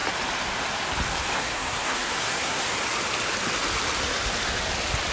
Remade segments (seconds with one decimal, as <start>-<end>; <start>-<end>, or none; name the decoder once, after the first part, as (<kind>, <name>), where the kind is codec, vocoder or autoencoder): 1.4-2.7 (codec, SNAC)